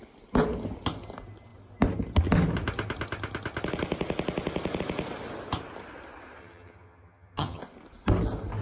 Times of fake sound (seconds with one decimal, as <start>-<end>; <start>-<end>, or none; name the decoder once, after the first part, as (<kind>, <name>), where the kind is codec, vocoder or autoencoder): 6.4-7.6 (vocoder, HiFi-GAN)